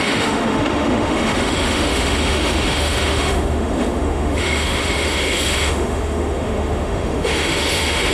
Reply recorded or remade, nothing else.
remade